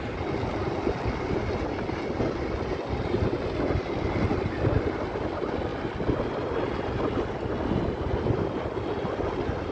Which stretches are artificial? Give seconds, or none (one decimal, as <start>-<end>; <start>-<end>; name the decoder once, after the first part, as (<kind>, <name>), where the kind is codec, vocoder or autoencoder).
none